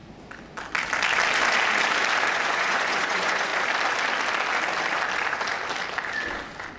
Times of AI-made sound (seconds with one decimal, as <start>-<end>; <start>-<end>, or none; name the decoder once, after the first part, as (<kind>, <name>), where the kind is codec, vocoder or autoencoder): 2.3-3.5 (vocoder, Vocos)